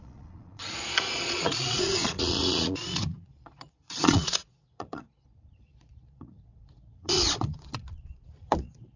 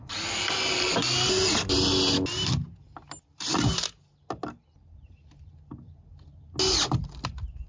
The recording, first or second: second